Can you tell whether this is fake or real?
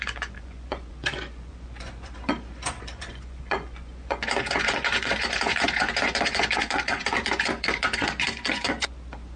fake